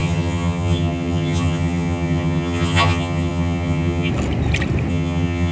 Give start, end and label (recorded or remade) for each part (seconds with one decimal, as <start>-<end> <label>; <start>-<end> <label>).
0.0-4.1 remade; 4.1-4.9 recorded; 4.9-5.5 remade